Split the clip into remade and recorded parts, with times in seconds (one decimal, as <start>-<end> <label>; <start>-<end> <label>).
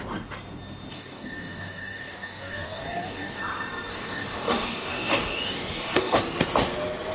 0.0-0.9 recorded; 0.9-3.4 remade; 3.4-3.9 recorded; 3.9-6.2 remade; 6.2-7.1 recorded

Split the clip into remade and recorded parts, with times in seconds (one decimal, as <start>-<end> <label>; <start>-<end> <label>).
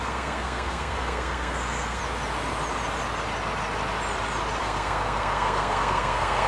0.0-2.0 remade; 2.0-4.6 recorded; 4.6-6.5 remade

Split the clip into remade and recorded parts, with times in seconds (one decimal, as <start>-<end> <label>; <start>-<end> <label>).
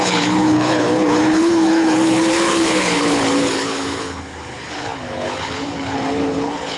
0.0-6.8 remade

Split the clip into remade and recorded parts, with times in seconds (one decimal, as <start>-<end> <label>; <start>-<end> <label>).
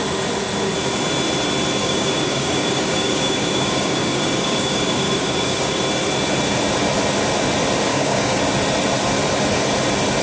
0.0-1.8 recorded; 1.8-5.8 remade; 5.8-7.9 recorded; 7.9-8.4 remade; 8.4-10.2 recorded